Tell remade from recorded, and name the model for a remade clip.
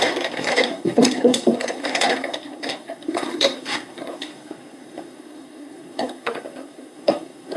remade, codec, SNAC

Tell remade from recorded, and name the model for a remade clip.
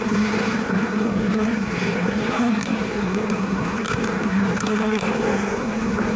remade, codec, SNAC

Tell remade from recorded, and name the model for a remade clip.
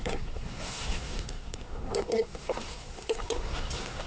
remade, codec, SNAC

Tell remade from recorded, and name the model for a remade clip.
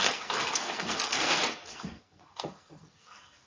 remade, codec, SNAC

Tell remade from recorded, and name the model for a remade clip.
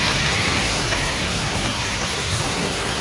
remade, codec, SNAC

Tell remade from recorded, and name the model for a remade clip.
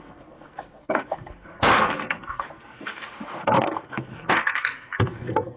remade, codec, SNAC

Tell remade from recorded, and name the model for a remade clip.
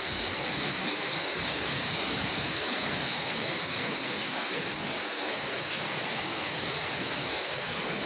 remade, codec, SNAC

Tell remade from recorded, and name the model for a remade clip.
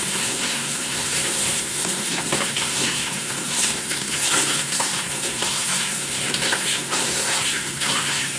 remade, codec, SNAC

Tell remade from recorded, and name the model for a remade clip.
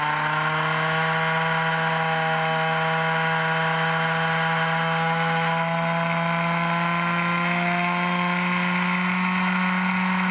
recorded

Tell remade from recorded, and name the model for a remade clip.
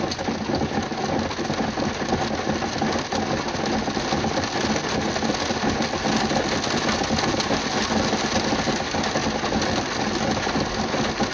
recorded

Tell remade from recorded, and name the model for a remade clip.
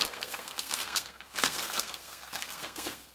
remade, codec, SNAC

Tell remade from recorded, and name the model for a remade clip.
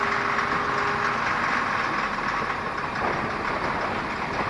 recorded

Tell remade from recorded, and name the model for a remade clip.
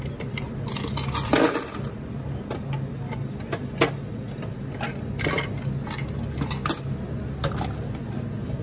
recorded